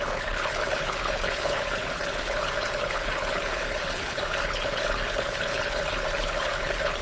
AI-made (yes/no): yes